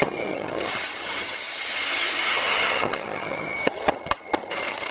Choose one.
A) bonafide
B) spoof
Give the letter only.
B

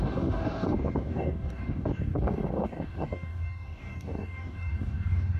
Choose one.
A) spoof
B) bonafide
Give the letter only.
A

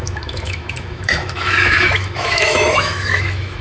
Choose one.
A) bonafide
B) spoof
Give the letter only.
B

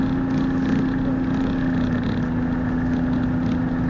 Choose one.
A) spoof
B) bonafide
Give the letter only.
B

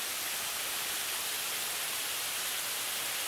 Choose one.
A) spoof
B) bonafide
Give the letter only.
B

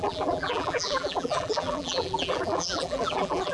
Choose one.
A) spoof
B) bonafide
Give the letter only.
A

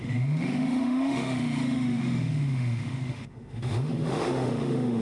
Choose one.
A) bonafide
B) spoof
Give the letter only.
B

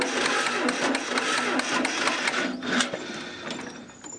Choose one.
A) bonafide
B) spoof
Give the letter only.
A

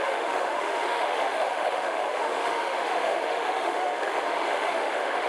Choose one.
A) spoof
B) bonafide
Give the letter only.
A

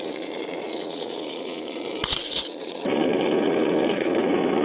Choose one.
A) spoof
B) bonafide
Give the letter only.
A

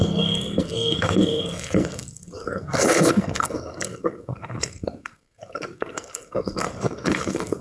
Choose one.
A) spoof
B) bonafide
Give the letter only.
A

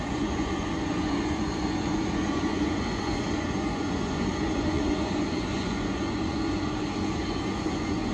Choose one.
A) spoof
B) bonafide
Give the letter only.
A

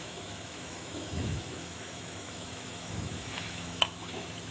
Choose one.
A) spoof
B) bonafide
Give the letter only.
A